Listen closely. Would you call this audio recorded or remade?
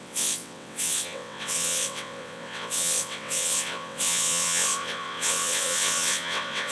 remade